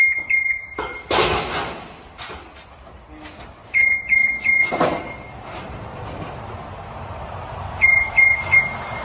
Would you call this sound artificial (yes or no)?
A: no